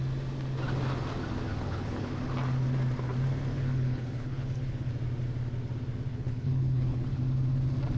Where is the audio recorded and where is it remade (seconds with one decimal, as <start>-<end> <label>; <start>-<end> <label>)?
0.0-1.5 recorded; 1.5-2.1 remade; 2.1-3.5 recorded; 3.5-4.9 remade; 4.9-6.1 recorded; 6.1-7.2 remade; 7.2-8.0 recorded